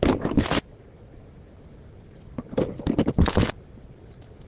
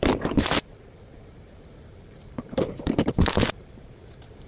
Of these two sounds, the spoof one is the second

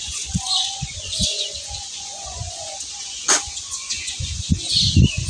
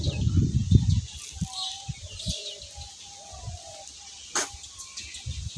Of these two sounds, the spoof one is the first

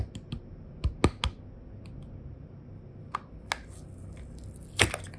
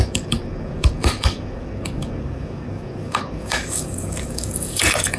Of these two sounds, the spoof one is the second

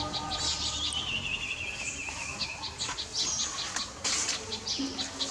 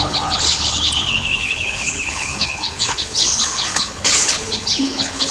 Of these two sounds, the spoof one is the second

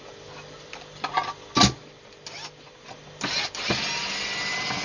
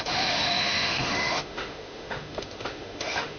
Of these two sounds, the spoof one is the second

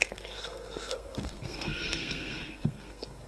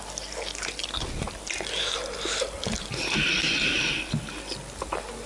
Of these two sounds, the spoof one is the first